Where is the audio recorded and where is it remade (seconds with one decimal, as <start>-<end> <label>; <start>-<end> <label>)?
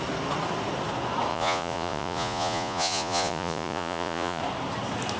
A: 0.0-1.3 recorded; 1.3-4.4 remade; 4.4-5.2 recorded